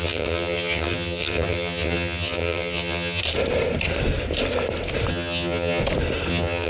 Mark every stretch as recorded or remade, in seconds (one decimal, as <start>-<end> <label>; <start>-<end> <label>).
0.0-3.2 remade; 3.2-5.1 recorded; 5.1-5.8 remade; 5.8-6.3 recorded; 6.3-6.7 remade